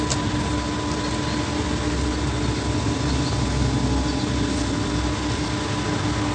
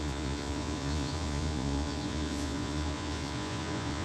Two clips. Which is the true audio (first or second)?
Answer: first